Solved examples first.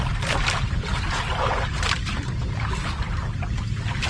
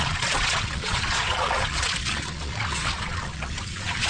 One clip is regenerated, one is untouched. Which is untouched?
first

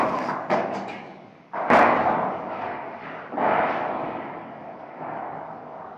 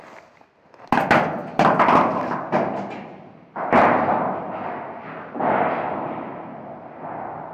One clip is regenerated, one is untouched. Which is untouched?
second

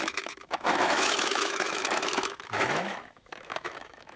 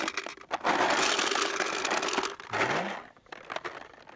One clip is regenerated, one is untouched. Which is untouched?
second